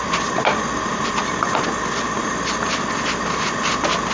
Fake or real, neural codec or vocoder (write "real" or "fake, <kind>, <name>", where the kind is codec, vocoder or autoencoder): real